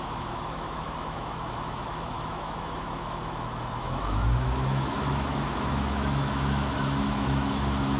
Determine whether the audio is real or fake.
fake